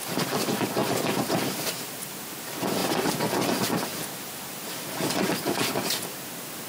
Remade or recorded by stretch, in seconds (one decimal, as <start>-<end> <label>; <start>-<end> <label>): 0.0-2.8 recorded; 2.8-3.5 remade; 3.5-3.9 recorded; 3.9-5.1 remade; 5.1-6.7 recorded